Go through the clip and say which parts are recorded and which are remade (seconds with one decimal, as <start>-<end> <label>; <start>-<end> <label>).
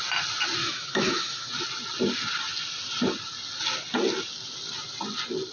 0.0-0.6 recorded; 0.6-1.5 remade; 1.5-5.5 recorded